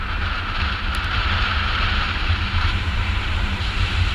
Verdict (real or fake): fake